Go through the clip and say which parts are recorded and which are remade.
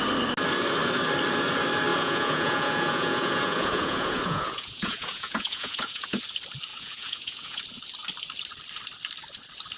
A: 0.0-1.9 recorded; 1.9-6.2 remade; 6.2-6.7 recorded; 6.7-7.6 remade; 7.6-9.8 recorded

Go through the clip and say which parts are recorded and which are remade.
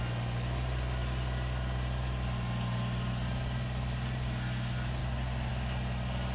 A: 0.0-6.3 recorded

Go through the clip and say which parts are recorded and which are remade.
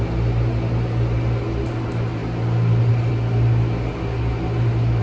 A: 0.0-5.0 recorded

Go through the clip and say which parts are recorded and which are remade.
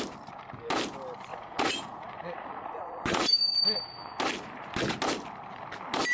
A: 0.0-1.3 recorded; 1.3-4.1 remade; 4.1-6.1 recorded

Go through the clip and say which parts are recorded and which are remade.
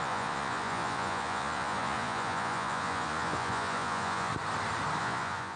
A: 0.0-4.3 remade; 4.3-5.0 recorded; 5.0-5.6 remade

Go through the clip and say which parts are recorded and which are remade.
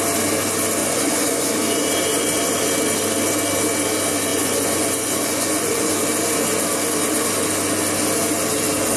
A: 0.0-0.8 recorded; 0.8-1.5 remade; 1.5-4.3 recorded; 4.3-5.9 remade; 5.9-9.0 recorded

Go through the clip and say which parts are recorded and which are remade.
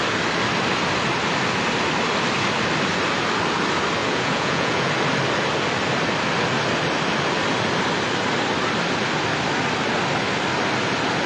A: 0.0-4.0 recorded; 4.0-4.9 remade; 4.9-11.3 recorded